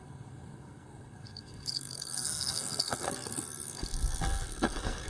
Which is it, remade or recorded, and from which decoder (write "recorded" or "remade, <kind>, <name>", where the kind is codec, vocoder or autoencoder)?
remade, codec, SNAC